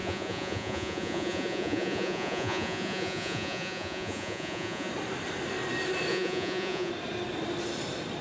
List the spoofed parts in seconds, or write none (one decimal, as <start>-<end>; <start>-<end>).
0.0-4.9; 6.1-6.9